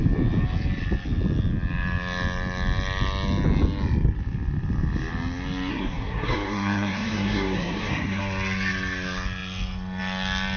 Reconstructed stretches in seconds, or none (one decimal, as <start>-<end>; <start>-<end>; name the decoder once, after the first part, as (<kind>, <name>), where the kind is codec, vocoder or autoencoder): 5.7-8.2 (codec, SNAC)